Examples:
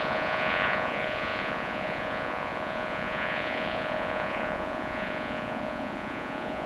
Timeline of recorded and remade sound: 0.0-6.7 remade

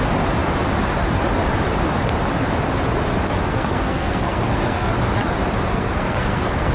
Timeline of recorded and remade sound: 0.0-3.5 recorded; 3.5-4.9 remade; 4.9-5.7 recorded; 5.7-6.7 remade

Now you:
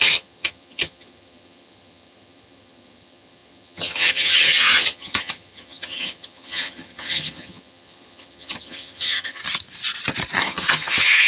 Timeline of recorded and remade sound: 0.0-9.4 remade; 9.4-10.4 recorded; 10.4-11.3 remade